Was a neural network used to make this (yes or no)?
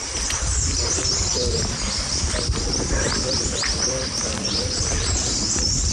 yes